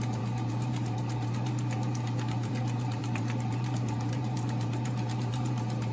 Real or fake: fake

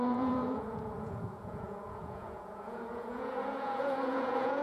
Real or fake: fake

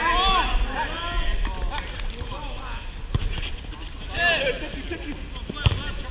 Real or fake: real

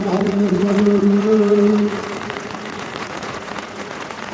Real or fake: fake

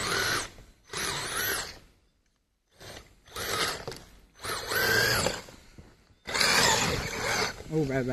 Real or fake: real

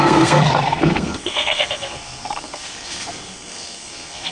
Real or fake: fake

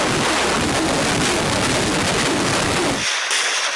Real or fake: real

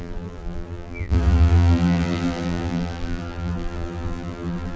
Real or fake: fake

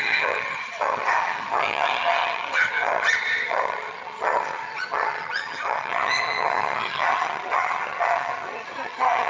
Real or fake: fake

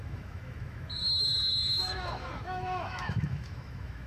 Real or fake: fake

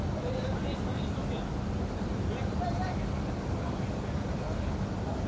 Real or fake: fake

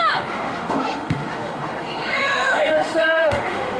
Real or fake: fake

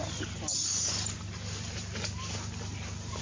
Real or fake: real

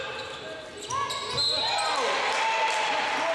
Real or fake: real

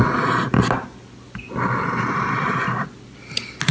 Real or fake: real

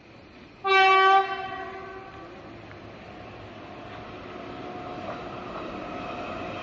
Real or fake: real